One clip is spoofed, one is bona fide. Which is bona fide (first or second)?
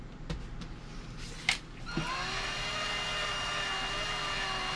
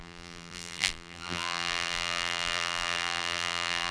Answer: first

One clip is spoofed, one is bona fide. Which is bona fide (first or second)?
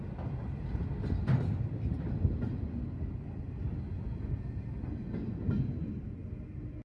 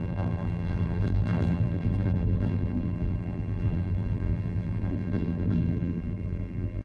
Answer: first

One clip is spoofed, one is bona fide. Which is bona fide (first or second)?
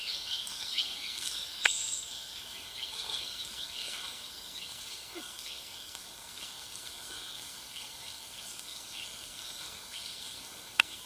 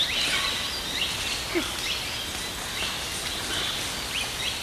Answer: second